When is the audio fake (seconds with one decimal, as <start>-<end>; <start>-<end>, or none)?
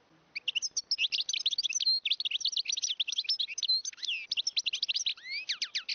none